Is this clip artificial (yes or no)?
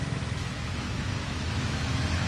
yes